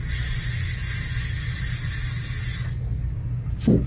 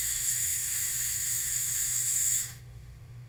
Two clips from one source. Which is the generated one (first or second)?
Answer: second